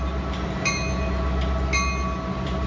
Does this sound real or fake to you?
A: real